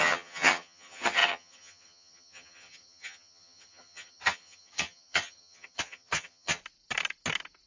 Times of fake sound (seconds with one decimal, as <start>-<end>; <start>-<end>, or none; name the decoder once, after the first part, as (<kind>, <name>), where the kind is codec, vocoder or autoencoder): 0.0-6.6 (vocoder, HiFi-GAN)